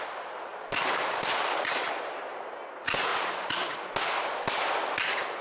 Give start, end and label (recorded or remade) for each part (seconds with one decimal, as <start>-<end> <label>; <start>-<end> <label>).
0.0-0.5 recorded; 0.5-1.8 remade; 1.8-5.4 recorded